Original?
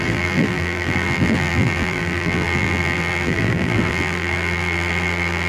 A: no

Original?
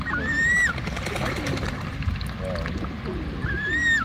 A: yes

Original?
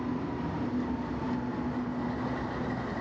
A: yes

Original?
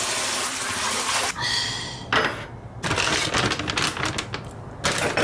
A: yes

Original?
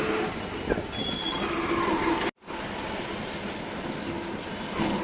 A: yes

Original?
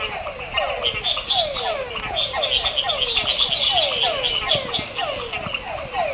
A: yes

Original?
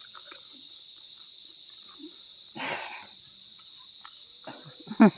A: yes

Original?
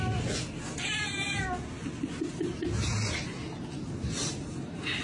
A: yes